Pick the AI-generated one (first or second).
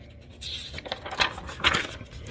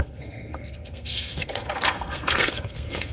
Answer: second